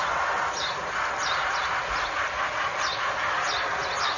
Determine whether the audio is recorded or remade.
recorded